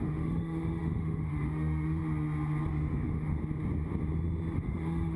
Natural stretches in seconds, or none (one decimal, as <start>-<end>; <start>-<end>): 2.0-2.7; 3.4-4.6